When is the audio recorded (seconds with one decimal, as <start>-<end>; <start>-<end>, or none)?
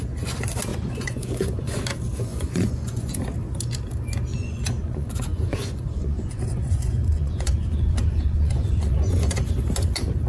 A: 0.0-0.7; 1.8-2.3; 3.2-4.3; 9.5-10.3